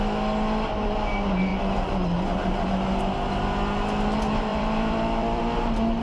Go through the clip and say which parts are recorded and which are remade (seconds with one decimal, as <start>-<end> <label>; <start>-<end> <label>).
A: 0.0-4.5 recorded; 4.5-5.4 remade; 5.4-6.0 recorded